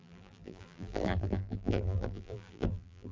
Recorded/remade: remade